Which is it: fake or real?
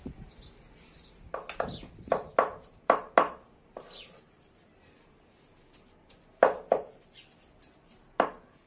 real